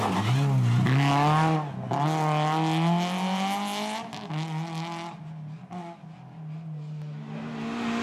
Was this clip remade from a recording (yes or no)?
no